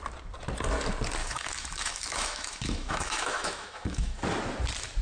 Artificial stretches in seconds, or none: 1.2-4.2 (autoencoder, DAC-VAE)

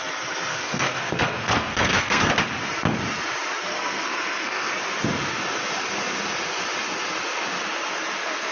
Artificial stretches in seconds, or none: 0.5-2.3 (codec, SNAC); 3.7-4.7

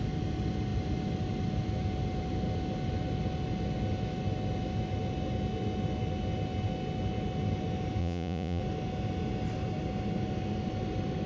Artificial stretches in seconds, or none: 8.0-8.6 (vocoder, Vocos)

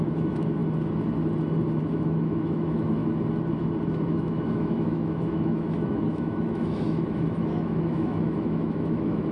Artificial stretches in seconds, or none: 0.0-0.6 (autoencoder, DAC-VAE); 1.8-3.0; 4.1-9.3

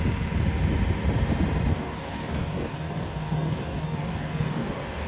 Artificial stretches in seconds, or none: 1.7-5.1 (codec, DAC)

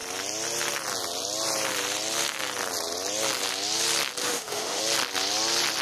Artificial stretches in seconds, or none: 4.2-4.8 (autoencoder, DAC-VAE)